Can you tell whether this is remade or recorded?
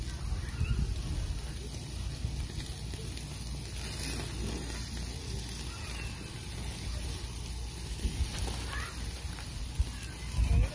recorded